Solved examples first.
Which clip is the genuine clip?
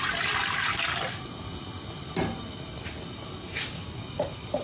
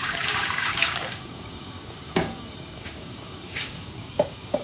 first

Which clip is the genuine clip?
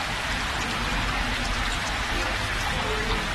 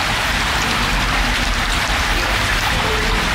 first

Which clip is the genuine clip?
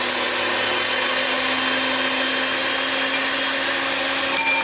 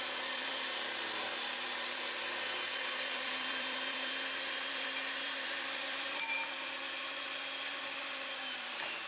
first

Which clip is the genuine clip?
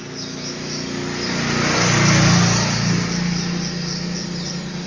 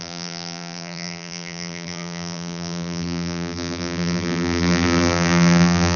first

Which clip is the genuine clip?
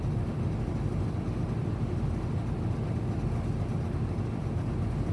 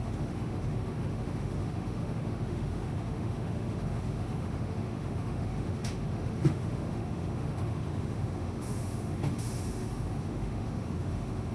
first